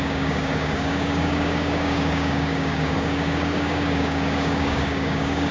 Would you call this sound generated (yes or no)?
yes